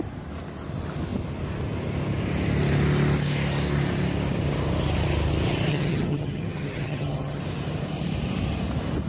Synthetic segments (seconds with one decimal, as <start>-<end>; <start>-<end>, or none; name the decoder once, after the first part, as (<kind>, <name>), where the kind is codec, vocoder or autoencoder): 5.7-7.4 (vocoder, HiFi-GAN)